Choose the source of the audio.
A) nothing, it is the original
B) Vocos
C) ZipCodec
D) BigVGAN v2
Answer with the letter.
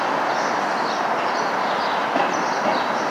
A